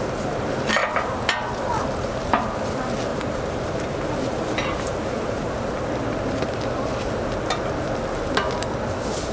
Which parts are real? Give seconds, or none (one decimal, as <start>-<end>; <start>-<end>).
0.0-0.8; 1.5-3.1; 5.5-9.3